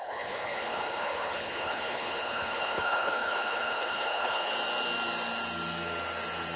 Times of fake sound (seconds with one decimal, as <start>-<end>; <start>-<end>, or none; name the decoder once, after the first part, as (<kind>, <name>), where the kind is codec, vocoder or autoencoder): 0.0-4.5 (codec, HILCodec)